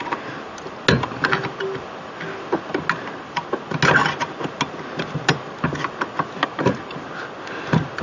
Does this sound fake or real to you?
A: real